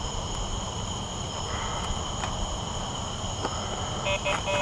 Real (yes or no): yes